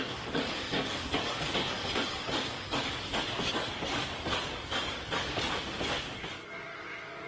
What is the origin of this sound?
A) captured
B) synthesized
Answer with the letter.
B